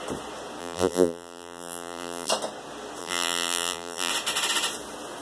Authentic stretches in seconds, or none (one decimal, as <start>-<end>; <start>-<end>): 0.0-0.6; 2.3-3.0; 4.1-5.2